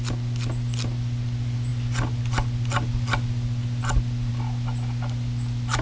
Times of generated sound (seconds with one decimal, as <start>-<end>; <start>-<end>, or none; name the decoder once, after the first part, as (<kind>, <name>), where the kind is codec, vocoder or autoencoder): none